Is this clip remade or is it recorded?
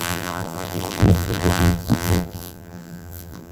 remade